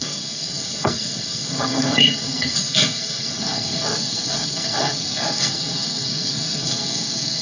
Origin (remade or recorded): remade